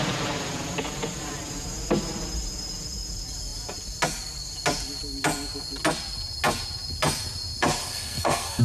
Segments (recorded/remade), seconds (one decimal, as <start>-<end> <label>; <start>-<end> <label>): 0.0-7.8 recorded; 7.8-8.6 remade